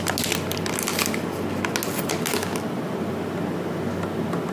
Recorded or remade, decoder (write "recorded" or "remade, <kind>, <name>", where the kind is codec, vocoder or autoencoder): recorded